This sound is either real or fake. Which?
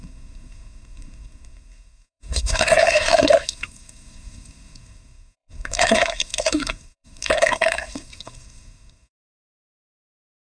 fake